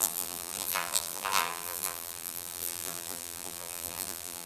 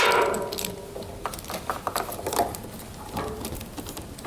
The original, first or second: second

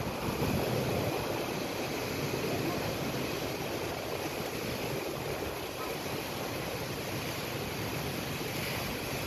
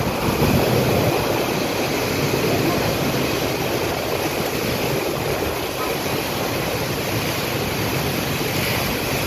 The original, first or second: second